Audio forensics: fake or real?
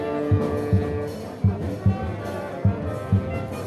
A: real